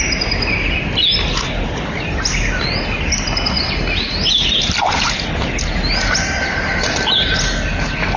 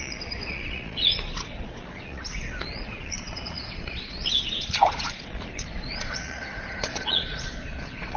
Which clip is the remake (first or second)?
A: second